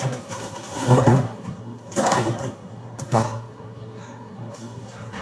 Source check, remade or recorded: remade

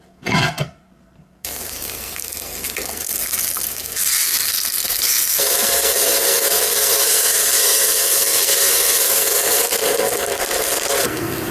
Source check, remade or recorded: remade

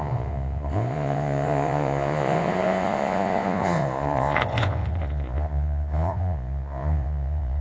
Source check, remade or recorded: remade